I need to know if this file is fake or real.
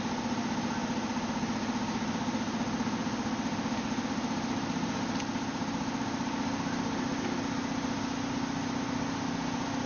real